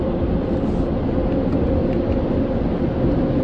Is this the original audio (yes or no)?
yes